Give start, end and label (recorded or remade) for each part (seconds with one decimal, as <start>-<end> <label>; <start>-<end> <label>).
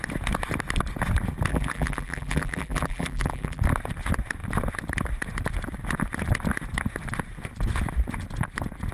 0.0-1.5 recorded; 1.5-3.6 remade; 3.6-8.9 recorded